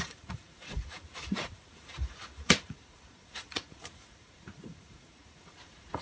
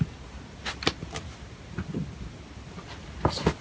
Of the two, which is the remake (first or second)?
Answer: first